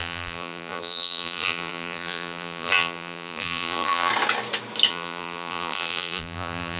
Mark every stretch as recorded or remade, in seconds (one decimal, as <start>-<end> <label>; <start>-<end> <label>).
0.0-4.1 remade; 4.1-4.9 recorded; 4.9-6.8 remade